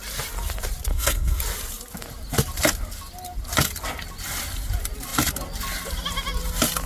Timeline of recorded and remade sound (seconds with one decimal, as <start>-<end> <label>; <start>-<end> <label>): 0.0-0.9 recorded; 0.9-1.4 remade; 1.4-6.9 recorded